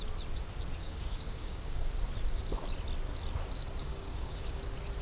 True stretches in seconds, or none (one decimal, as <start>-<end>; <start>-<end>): 0.0-0.8; 1.9-3.8; 4.6-5.0